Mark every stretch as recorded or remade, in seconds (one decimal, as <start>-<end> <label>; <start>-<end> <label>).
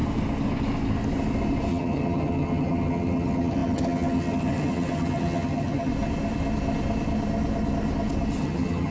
0.0-1.7 recorded; 1.7-5.9 remade; 5.9-8.4 recorded; 8.4-8.9 remade